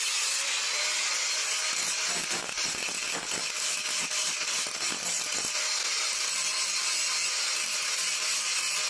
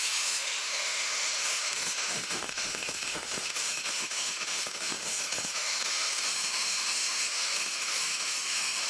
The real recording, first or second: first